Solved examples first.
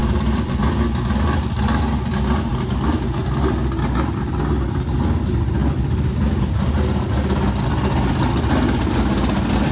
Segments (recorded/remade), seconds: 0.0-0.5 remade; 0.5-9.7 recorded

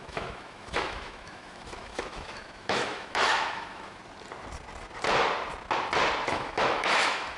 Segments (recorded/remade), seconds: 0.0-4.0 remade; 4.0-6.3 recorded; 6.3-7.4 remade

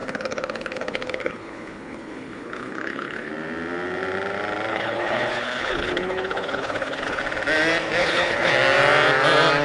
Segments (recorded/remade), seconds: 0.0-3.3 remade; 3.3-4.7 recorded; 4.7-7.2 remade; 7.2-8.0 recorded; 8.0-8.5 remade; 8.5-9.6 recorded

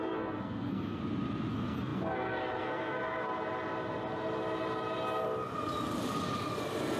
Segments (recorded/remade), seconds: 0.0-1.0 remade; 1.0-1.5 recorded; 1.5-3.3 remade; 3.3-7.0 recorded

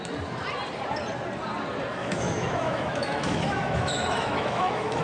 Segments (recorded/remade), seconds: 0.0-2.0 recorded; 2.0-5.0 remade

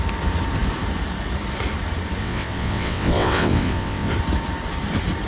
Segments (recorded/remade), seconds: 0.0-2.2 recorded; 2.2-4.1 remade; 4.1-5.3 recorded